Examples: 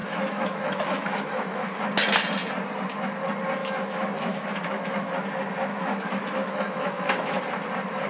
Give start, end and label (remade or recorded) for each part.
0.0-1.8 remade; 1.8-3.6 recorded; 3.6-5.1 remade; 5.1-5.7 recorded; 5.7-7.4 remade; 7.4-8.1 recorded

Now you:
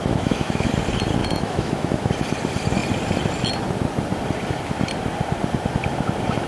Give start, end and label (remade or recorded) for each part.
0.0-0.7 remade; 0.7-1.2 recorded; 1.2-2.1 remade; 2.1-6.5 recorded

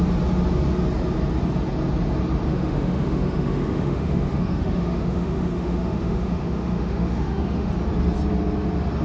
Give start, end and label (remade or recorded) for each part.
0.0-2.5 recorded; 2.5-7.7 remade; 7.7-9.0 recorded

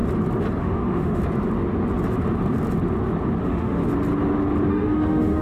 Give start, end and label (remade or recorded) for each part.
0.0-0.6 recorded; 0.6-1.2 remade; 1.2-3.4 recorded; 3.4-3.8 remade; 3.8-4.7 recorded; 4.7-5.4 remade

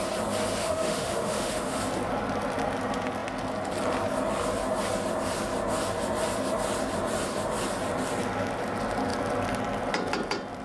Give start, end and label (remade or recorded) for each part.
0.0-0.6 recorded; 0.6-1.8 remade; 1.8-10.6 recorded

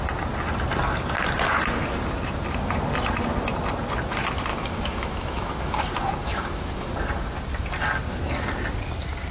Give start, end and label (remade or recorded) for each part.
0.0-4.5 recorded; 4.5-5.8 remade; 5.8-6.2 recorded; 6.2-6.9 remade; 6.9-9.3 recorded

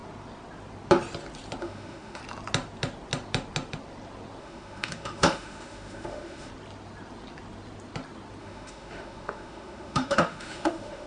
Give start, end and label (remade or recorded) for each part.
0.0-1.6 recorded; 1.6-2.2 remade; 2.2-4.4 recorded; 4.4-6.5 remade; 6.5-8.4 recorded; 8.4-11.1 remade

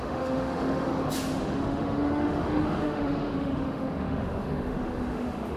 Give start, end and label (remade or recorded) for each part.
0.0-0.9 remade; 0.9-1.4 recorded; 1.4-5.6 remade